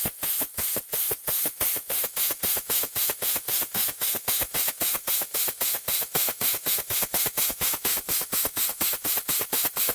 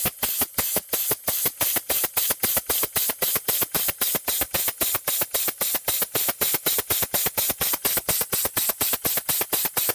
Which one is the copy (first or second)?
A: first